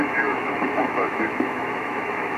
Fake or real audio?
fake